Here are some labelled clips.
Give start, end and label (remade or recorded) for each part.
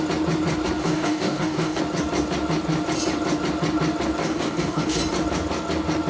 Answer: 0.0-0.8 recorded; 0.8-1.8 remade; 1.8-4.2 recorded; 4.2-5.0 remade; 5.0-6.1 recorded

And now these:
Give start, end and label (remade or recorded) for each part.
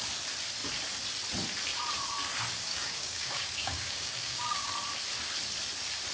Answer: 0.0-2.7 recorded; 2.7-4.7 remade; 4.7-6.1 recorded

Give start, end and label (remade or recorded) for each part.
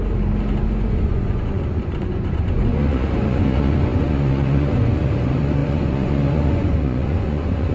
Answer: 0.0-0.6 recorded; 0.6-7.7 remade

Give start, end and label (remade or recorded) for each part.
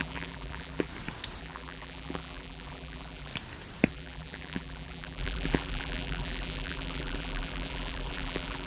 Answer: 0.0-0.9 remade; 0.9-1.4 recorded; 1.4-3.3 remade; 3.3-3.9 recorded; 3.9-8.7 remade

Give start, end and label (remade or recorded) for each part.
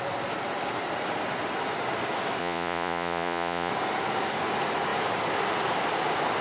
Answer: 0.0-2.4 recorded; 2.4-3.7 remade; 3.7-6.4 recorded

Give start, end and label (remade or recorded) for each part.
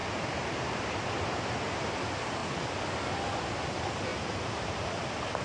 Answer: 0.0-0.8 remade; 0.8-5.4 recorded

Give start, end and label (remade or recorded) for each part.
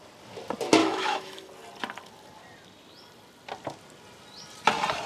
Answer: 0.0-0.8 recorded; 0.8-1.5 remade; 1.5-5.1 recorded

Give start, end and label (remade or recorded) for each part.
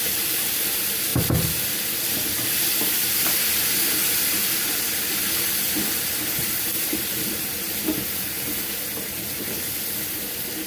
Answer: 0.0-10.7 recorded